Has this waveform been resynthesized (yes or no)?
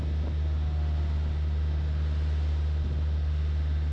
no